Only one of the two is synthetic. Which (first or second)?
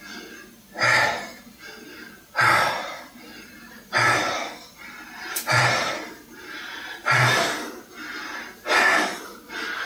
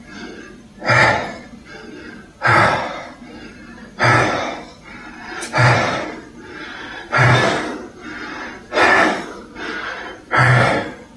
second